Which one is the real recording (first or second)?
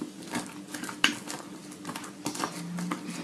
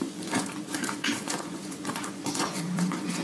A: first